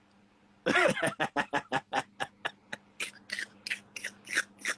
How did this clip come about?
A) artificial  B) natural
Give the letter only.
B